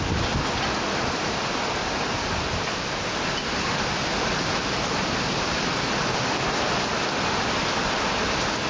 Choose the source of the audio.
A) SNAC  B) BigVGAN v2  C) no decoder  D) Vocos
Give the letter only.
C